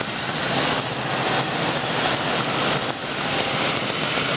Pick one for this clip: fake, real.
real